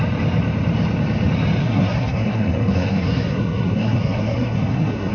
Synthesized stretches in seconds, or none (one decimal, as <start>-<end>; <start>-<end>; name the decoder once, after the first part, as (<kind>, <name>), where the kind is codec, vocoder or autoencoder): 1.6-5.1 (codec, SNAC)